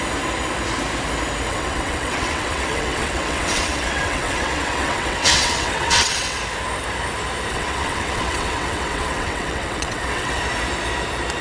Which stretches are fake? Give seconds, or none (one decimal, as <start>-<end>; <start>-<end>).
1.5-6.4; 7.5-10.4